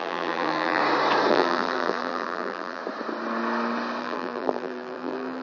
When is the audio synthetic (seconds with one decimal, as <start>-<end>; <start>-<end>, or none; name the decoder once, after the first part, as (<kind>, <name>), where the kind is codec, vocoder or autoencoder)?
0.0-0.8 (vocoder, BigVGAN v2); 1.3-2.8; 4.0-5.4